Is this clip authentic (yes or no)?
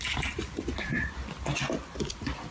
yes